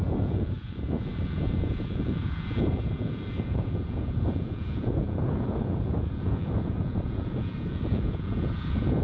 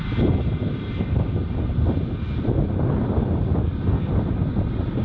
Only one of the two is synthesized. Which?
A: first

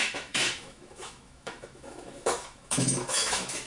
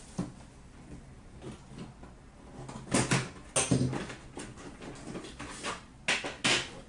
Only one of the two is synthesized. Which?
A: first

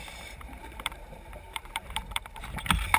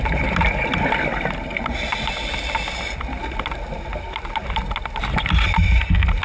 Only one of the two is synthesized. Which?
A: first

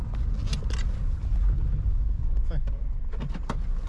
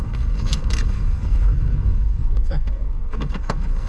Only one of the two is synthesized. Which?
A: second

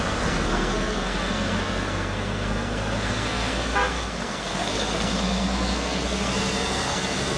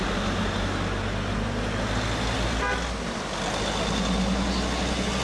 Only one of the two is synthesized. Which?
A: first